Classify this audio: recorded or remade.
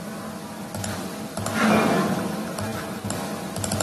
recorded